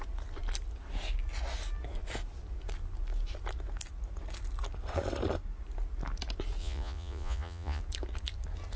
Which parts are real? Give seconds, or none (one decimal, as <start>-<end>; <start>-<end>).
0.0-6.6; 7.8-8.8